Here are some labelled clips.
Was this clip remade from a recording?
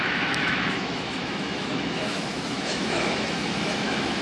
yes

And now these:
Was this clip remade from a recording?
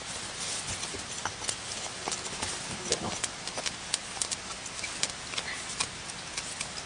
no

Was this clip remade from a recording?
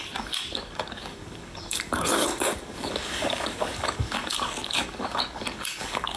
yes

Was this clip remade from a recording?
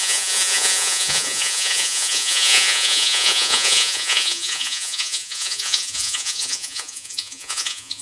yes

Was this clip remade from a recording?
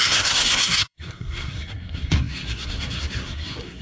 yes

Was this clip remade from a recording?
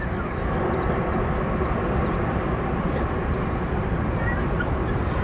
yes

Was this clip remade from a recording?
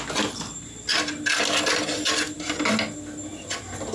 no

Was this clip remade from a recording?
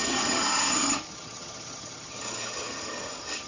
yes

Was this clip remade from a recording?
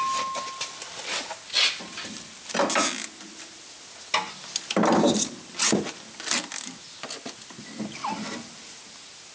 no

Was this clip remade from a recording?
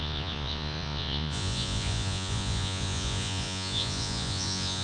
yes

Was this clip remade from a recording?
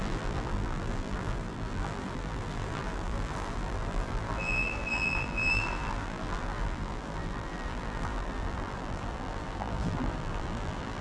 yes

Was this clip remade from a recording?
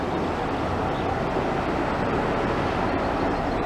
no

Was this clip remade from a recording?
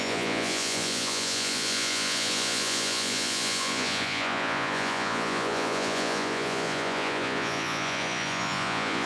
yes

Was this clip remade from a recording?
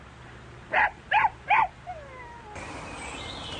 yes